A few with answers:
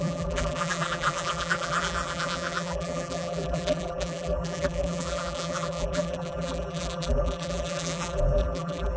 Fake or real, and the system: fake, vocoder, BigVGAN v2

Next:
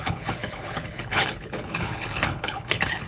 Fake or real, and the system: fake, codec, HILCodec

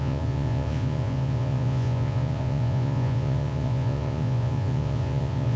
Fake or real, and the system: fake, vocoder, Vocos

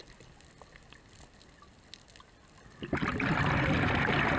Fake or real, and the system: real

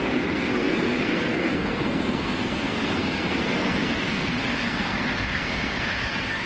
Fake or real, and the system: fake, codec, SNAC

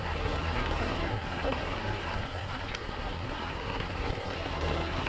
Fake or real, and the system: fake, codec, SNAC